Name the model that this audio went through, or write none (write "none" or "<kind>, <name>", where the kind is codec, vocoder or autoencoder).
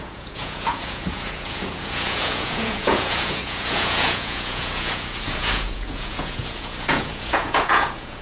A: vocoder, Vocos